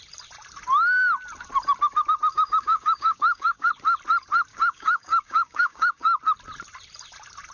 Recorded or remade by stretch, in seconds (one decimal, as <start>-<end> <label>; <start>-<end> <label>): 0.0-2.3 recorded; 2.3-3.7 remade; 3.7-4.5 recorded; 4.5-6.2 remade; 6.2-7.5 recorded